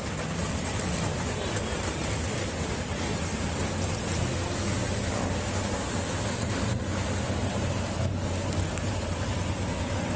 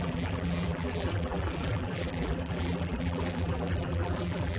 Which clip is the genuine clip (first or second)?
first